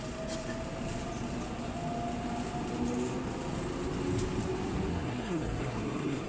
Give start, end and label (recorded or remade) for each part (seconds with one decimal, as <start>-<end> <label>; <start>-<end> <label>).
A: 0.0-4.9 recorded; 4.9-6.3 remade